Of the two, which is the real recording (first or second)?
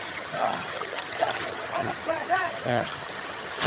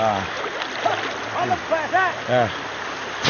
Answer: second